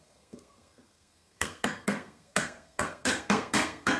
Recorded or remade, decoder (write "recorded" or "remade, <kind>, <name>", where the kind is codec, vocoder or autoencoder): remade, codec, SNAC